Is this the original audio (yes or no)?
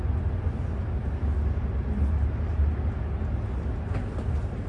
yes